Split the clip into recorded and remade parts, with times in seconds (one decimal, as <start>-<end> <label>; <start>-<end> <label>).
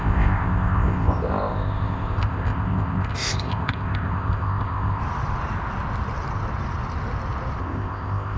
0.0-5.0 remade; 5.0-7.6 recorded; 7.6-8.4 remade